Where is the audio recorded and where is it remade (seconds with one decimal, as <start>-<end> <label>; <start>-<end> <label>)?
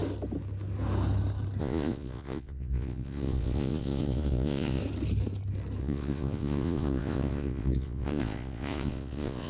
0.0-1.6 recorded; 1.6-4.8 remade; 4.8-5.8 recorded; 5.8-9.5 remade